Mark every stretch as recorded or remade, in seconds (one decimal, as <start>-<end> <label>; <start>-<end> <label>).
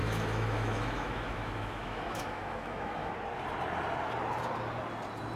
0.0-3.1 remade; 3.1-5.4 recorded